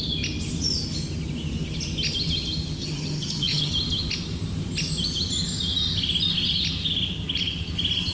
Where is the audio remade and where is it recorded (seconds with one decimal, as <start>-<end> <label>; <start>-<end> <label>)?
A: 0.0-2.8 recorded; 2.8-3.7 remade; 3.7-8.1 recorded